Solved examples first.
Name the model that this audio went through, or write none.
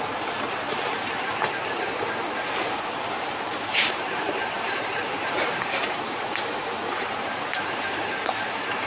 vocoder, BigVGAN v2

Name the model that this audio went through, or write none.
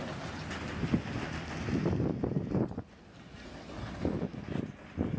none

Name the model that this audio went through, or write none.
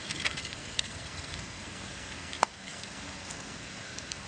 codec, SNAC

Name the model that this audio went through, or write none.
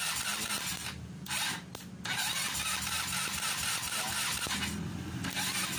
none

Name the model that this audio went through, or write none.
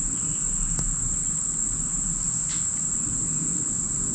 none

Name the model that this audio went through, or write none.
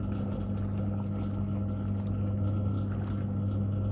none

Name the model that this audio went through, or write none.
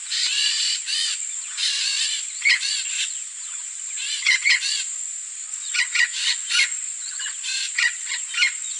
vocoder, Vocos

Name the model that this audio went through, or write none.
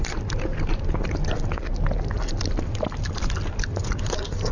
none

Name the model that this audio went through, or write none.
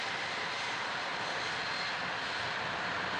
none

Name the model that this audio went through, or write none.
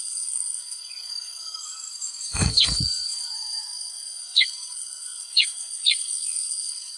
codec, SNAC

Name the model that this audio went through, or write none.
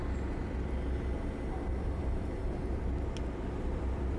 none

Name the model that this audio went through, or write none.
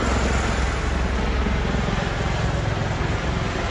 none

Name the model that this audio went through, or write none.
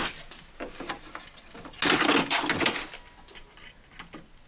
none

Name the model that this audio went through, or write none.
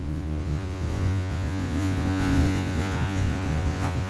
vocoder, Vocos